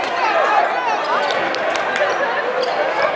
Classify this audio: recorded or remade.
recorded